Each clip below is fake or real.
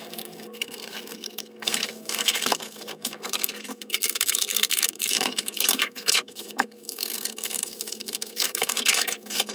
fake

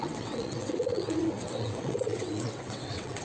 fake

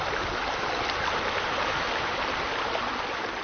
real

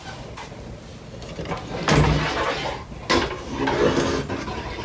real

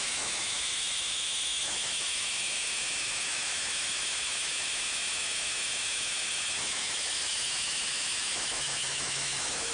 fake